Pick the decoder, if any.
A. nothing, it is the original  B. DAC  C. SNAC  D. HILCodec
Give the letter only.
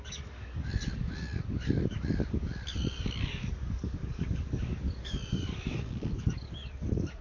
B